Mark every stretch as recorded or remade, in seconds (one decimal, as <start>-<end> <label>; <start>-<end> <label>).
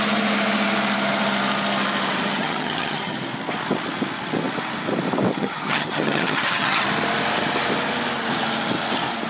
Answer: 0.0-2.4 recorded; 2.4-3.2 remade; 3.2-5.3 recorded; 5.3-6.8 remade; 6.8-9.3 recorded